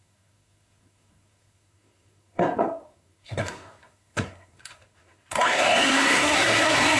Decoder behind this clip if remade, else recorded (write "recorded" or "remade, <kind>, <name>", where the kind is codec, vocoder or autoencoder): remade, codec, SNAC